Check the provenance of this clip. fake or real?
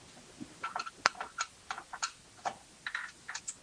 real